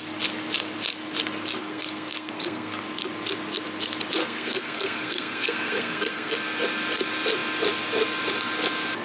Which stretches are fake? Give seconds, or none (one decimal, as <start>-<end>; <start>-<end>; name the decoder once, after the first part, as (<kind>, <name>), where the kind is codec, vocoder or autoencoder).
1.6-2.8 (codec, SNAC); 4.2-6.3